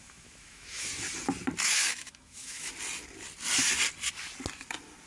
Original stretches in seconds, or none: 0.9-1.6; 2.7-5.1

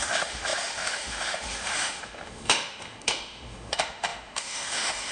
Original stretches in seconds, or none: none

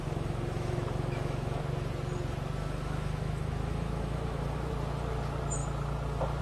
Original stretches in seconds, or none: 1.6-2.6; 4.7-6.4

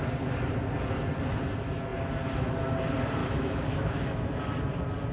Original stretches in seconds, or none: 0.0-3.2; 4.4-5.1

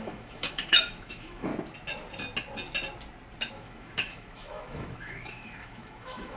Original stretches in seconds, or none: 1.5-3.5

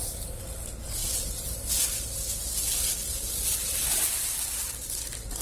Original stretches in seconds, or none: 0.0-5.4

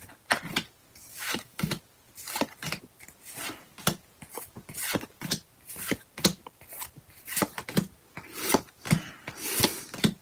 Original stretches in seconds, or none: 0.0-1.1; 1.8-10.2

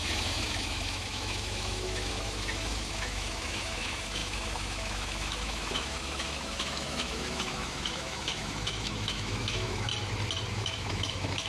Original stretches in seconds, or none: 9.9-10.5